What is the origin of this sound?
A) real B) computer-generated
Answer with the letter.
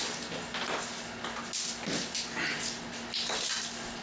A